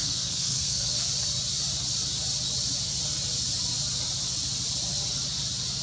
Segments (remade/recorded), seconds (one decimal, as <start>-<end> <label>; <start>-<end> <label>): 0.0-1.1 remade; 1.1-5.8 recorded